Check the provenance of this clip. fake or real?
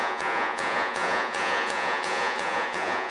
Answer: fake